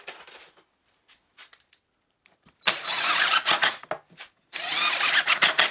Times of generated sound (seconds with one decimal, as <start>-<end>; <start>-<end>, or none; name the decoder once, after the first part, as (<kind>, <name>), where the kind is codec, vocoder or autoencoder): 2.9-3.7 (vocoder, Vocos)